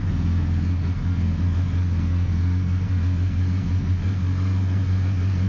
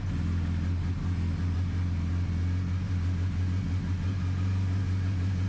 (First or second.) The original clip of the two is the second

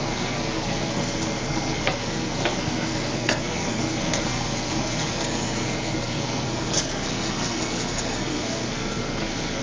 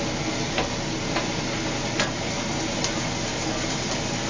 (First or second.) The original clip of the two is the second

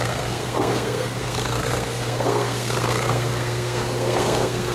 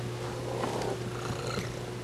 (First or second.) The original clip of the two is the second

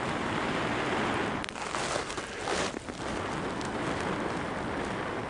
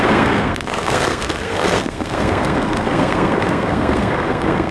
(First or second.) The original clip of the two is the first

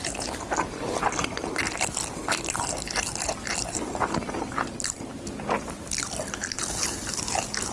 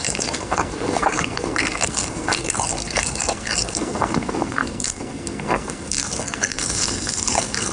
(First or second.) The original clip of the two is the first